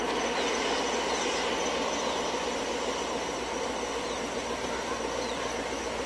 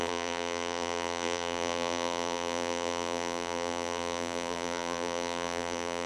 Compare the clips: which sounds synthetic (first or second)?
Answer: second